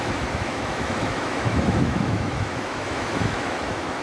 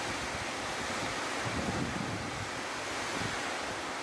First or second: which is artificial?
first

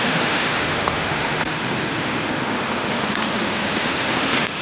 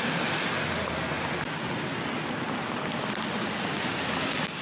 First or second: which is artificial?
first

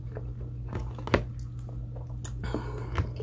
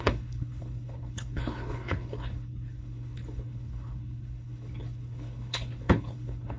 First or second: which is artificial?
second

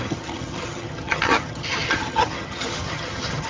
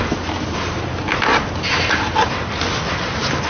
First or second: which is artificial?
first